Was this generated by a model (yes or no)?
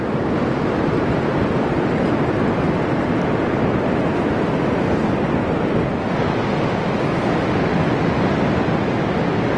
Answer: no